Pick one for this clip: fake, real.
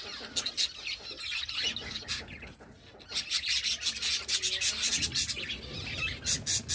real